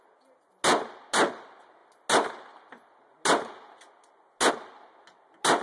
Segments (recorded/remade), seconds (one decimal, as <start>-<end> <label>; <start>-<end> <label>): 0.0-5.6 recorded